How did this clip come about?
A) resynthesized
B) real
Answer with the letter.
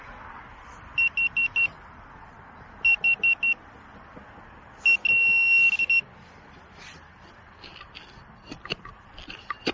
B